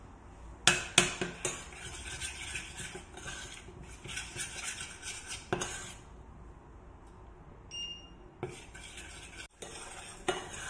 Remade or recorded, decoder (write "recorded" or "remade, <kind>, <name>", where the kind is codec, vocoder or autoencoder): recorded